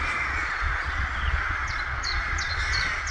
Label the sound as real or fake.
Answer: fake